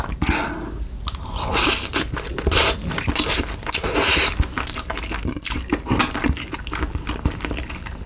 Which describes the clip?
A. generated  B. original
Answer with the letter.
B